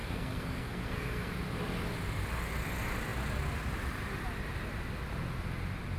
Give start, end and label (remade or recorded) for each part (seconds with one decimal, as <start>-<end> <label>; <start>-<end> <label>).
0.0-1.3 remade; 1.3-6.0 recorded